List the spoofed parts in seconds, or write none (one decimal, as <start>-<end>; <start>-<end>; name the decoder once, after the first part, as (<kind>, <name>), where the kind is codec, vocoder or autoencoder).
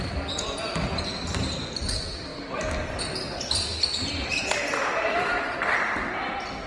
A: none